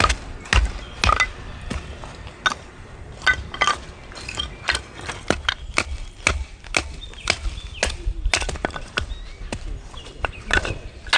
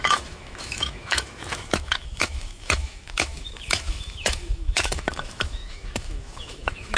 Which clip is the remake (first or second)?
second